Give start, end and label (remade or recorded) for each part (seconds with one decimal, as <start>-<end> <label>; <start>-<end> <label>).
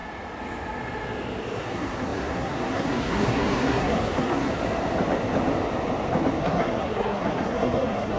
0.0-1.6 recorded; 1.6-4.5 remade; 4.5-6.4 recorded; 6.4-8.2 remade